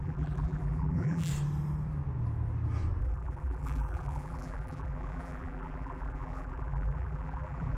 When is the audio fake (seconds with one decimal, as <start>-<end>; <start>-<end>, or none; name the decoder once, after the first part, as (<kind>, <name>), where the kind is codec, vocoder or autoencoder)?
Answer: 0.0-1.3 (vocoder, BigVGAN v2); 3.0-7.8